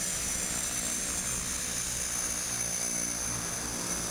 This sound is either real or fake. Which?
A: real